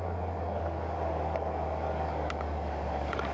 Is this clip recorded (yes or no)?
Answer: no